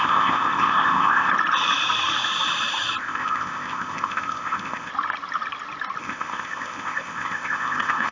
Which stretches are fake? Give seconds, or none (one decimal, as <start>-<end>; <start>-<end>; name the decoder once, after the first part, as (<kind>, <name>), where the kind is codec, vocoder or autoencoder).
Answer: 0.0-1.3 (codec, ZipCodec); 3.0-4.9; 6.0-8.1